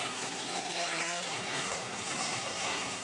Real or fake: fake